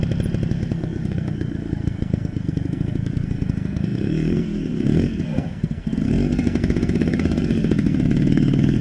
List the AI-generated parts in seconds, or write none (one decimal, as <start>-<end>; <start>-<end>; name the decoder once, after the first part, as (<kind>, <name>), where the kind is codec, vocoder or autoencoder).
0.5-8.8 (codec, SNAC)